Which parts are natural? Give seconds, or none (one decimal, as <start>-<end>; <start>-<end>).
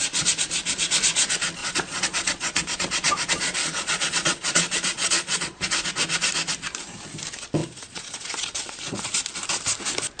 0.0-1.6; 5.9-7.6; 9.1-10.2